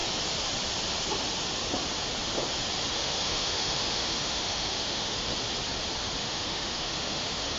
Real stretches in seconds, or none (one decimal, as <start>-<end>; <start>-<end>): 0.0-2.9; 5.3-6.2